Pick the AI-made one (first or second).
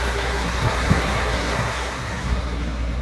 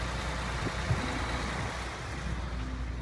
first